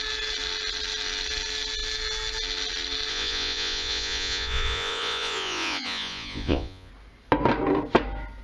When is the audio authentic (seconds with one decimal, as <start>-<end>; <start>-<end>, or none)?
0.0-3.1; 6.9-8.4